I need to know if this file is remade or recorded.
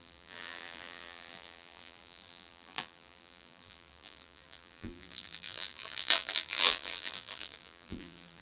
remade